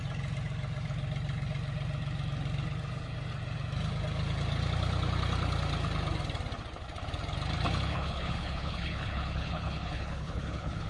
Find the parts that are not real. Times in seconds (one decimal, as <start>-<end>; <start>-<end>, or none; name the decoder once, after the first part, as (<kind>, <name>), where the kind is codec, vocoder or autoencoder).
7.9-10.9 (codec, HILCodec)